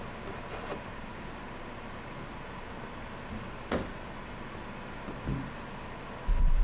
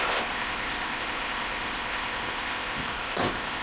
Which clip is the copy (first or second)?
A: second